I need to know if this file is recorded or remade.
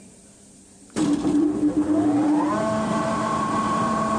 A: remade